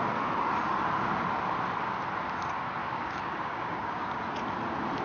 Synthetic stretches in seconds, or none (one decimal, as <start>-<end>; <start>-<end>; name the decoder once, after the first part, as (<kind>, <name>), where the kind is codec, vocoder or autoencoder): 2.8-4.2 (codec, DAC)